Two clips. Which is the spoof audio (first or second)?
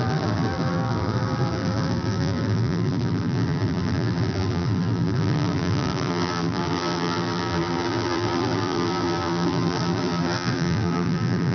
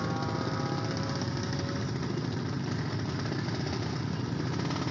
first